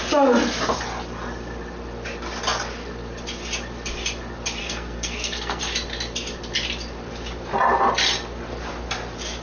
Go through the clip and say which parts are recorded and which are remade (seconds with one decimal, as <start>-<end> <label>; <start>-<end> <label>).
0.0-4.6 recorded; 4.6-5.6 remade; 5.6-9.4 recorded